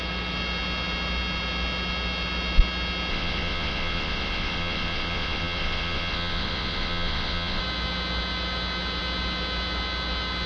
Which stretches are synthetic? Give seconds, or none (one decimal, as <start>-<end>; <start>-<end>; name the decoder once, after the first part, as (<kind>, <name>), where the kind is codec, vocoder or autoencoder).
3.1-7.6 (vocoder, Vocos)